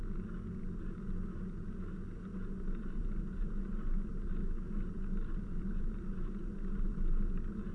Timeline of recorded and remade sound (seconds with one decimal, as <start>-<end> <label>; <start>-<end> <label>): 0.0-7.7 recorded